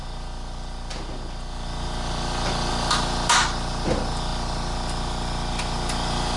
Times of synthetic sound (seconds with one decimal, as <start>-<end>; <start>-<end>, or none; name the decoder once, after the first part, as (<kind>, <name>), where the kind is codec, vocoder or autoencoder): 0.0-6.4 (vocoder, BigVGAN v2)